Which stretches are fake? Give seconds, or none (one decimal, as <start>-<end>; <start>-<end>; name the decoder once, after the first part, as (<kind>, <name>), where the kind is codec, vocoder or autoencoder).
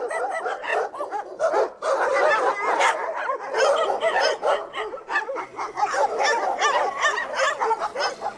none